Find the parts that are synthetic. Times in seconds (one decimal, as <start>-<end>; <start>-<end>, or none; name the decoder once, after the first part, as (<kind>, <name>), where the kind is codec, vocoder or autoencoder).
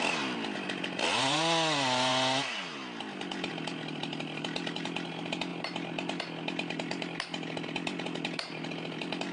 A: none